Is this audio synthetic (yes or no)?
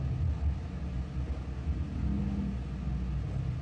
no